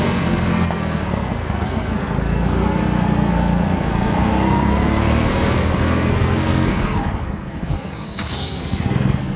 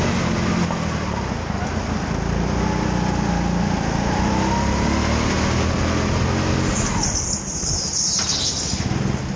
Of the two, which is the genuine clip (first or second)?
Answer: second